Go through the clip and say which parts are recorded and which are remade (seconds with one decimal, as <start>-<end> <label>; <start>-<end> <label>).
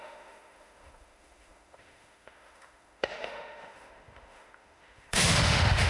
0.0-5.9 remade